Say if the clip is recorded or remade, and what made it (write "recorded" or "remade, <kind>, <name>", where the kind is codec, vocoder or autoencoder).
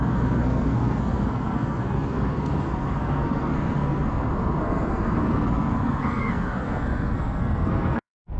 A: remade, codec, SNAC